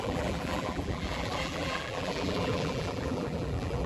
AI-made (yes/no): yes